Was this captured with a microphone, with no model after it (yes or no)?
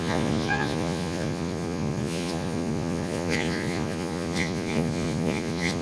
no